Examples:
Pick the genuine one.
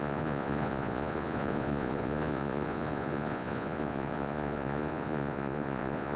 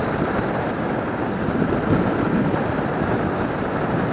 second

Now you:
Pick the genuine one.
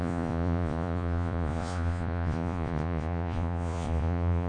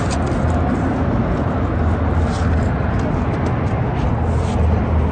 second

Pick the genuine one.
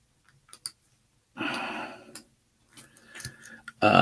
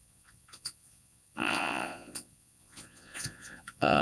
first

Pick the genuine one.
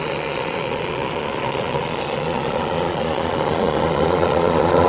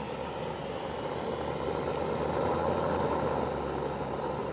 second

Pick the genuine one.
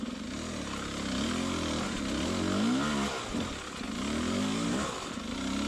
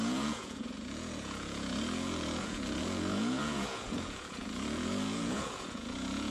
first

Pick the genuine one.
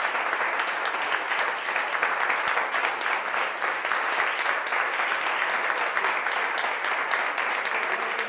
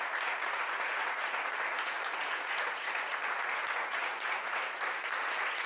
first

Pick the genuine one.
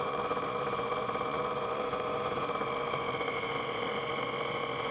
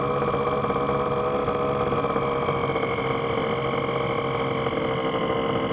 second